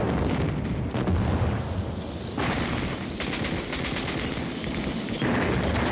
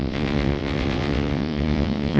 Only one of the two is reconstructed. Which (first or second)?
second